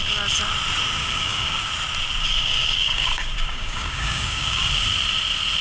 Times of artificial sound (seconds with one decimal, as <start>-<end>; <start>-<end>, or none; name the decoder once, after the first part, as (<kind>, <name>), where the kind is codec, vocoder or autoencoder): 1.0-1.7 (codec, DAC); 2.3-4.6